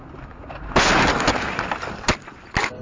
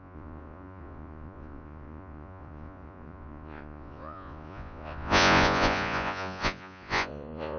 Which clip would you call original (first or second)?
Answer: first